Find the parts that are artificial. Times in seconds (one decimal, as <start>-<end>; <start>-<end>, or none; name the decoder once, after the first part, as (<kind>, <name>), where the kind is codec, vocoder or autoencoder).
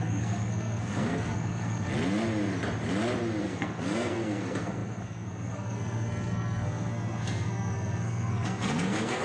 0.0-1.9 (codec, SNAC); 3.4-9.2